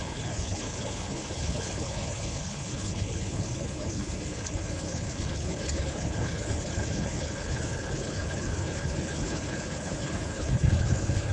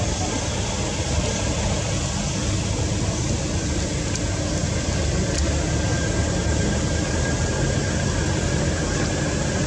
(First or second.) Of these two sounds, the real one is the second